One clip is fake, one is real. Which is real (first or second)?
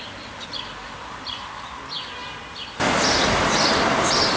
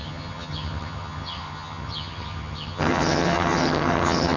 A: first